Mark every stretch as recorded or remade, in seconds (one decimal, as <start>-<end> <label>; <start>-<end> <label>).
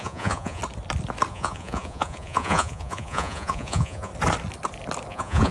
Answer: 0.0-0.6 remade; 0.6-1.3 recorded; 1.3-4.1 remade; 4.1-5.1 recorded; 5.1-5.5 remade